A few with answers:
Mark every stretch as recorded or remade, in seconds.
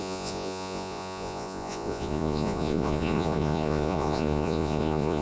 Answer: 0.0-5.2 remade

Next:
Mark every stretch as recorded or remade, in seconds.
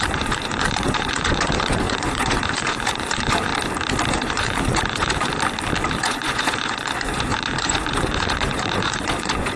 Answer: 0.0-3.5 remade; 3.5-4.1 recorded; 4.1-5.3 remade; 5.3-6.0 recorded; 6.0-9.6 remade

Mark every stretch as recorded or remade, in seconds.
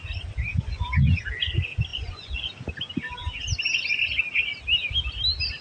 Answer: 0.0-0.5 recorded; 0.5-1.2 remade; 1.2-1.9 recorded; 1.9-2.5 remade; 2.5-5.6 recorded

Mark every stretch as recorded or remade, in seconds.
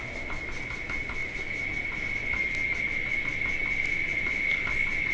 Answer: 0.0-5.1 recorded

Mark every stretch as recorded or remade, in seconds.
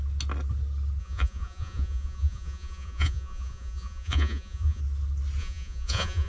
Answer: 0.0-1.0 recorded; 1.0-4.8 remade; 4.8-5.4 recorded; 5.4-6.3 remade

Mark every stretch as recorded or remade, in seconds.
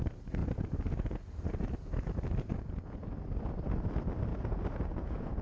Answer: 0.0-0.4 recorded; 0.4-2.1 remade; 2.1-2.5 recorded; 2.5-3.1 remade; 3.1-4.3 recorded; 4.3-5.4 remade